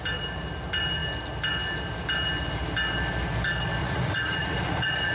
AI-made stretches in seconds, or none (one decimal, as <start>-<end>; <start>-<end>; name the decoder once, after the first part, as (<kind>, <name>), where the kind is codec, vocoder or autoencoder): 3.8-5.1 (vocoder, Vocos)